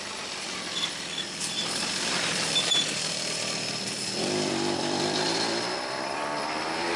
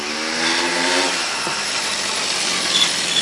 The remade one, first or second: first